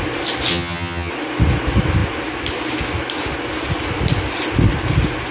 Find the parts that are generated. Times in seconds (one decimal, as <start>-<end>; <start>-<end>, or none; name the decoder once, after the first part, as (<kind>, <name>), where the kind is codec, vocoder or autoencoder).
0.5-1.1 (vocoder, HiFi-GAN)